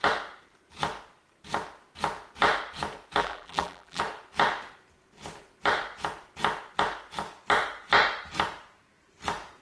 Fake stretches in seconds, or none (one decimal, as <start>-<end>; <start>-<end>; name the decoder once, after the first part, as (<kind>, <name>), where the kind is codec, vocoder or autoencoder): 3.2-4.0 (vocoder, BigVGAN v2)